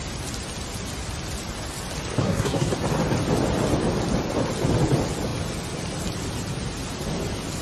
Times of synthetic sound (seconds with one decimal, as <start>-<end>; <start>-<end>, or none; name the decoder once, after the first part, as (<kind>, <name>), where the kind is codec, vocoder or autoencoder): 2.2-2.7 (codec, SNAC)

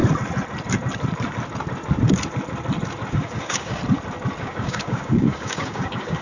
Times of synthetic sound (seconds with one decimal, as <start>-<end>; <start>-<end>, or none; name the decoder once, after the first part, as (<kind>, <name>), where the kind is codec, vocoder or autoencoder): 3.1-3.8 (codec, DAC); 4.4-6.2